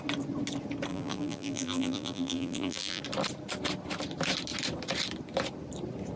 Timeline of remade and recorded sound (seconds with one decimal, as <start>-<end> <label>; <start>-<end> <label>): 0.0-0.9 recorded; 0.9-3.0 remade; 3.0-6.2 recorded